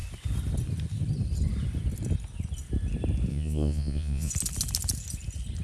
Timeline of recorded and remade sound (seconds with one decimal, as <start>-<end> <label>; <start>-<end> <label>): 0.0-3.3 recorded; 3.3-4.3 remade; 4.3-5.6 recorded